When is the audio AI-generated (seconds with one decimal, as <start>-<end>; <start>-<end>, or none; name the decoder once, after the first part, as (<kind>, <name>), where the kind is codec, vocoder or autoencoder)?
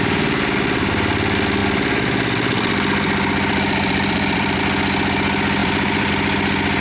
1.6-4.6 (vocoder, BigVGAN v2); 5.6-6.1